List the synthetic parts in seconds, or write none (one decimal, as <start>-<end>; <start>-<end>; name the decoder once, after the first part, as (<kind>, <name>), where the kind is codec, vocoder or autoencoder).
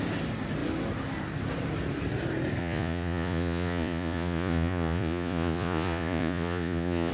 2.6-7.1 (vocoder, Vocos)